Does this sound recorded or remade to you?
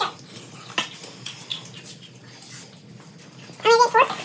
recorded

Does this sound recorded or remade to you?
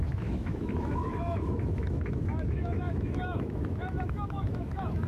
remade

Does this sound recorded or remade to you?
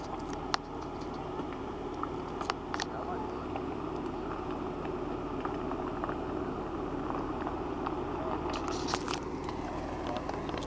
recorded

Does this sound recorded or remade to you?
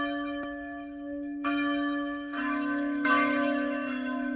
remade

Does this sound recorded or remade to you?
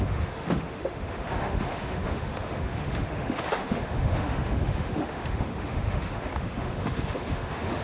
remade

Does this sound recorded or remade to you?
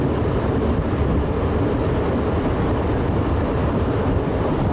recorded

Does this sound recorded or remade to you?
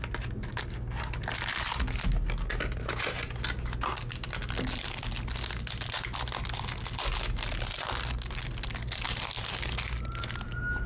recorded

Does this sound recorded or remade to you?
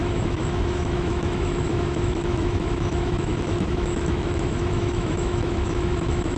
remade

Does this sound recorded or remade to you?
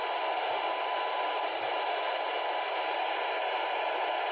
recorded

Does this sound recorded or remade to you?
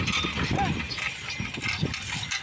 recorded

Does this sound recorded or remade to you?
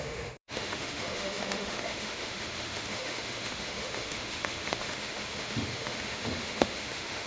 remade